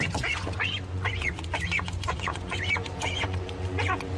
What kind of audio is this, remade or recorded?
remade